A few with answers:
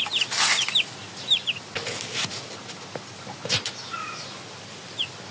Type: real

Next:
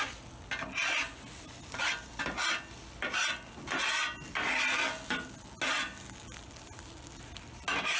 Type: real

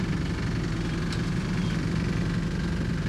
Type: real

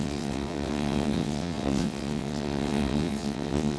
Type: fake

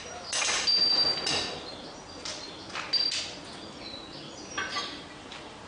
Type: real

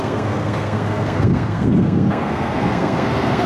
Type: fake